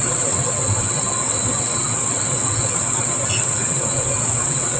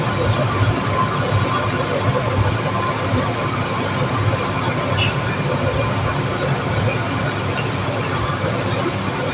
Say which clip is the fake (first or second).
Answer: first